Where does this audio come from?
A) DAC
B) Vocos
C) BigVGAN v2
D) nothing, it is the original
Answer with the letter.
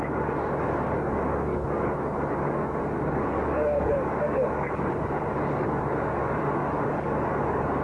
A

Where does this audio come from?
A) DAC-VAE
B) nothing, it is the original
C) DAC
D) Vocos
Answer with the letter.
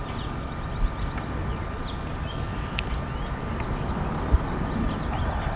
B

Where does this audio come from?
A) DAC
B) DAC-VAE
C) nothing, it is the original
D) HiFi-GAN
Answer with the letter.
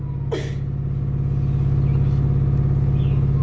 C